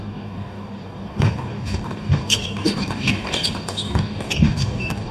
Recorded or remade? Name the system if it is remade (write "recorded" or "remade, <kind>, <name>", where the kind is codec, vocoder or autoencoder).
remade, codec, DAC